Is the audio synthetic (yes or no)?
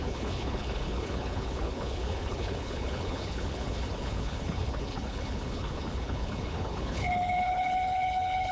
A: yes